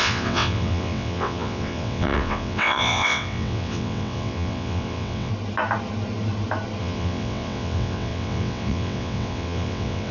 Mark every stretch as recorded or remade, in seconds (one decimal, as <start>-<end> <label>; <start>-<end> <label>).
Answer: 0.0-5.3 remade; 5.3-6.8 recorded; 6.8-10.1 remade